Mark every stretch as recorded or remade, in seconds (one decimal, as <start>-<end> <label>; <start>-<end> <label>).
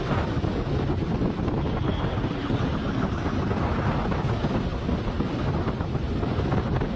0.0-7.0 recorded